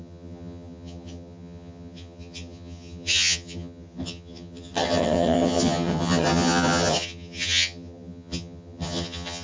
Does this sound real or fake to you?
fake